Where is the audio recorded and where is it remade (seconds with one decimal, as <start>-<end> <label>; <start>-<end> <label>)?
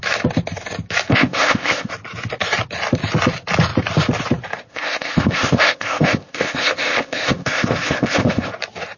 0.0-1.1 recorded; 1.1-1.9 remade; 1.9-4.7 recorded; 4.7-8.5 remade; 8.5-9.0 recorded